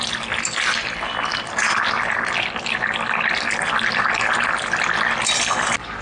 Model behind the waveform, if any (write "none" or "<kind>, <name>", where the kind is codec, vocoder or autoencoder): none